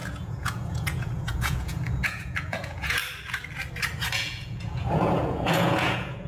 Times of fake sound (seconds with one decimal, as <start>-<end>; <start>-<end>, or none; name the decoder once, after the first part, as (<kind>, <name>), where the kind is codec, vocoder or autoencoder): 0.0-3.0 (vocoder, Vocos); 4.1-6.3